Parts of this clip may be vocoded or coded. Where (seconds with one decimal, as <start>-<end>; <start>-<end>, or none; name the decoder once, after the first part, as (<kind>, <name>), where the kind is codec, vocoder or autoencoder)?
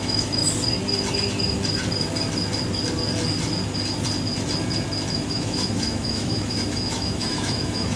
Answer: 0.0-0.4 (autoencoder, DAC-VAE); 5.1-8.0